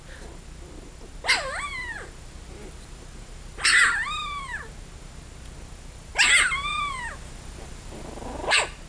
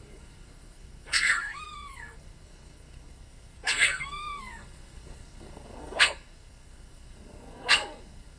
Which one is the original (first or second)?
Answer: first